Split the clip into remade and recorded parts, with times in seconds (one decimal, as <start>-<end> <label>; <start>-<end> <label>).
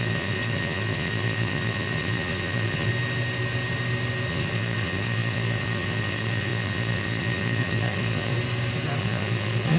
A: 0.0-2.9 remade; 2.9-4.3 recorded; 4.3-8.3 remade; 8.3-9.0 recorded; 9.0-9.8 remade